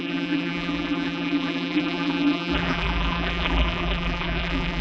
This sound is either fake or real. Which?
fake